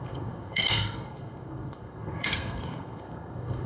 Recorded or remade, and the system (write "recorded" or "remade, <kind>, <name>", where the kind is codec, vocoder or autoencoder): remade, codec, SNAC